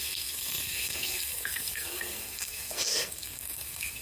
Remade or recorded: remade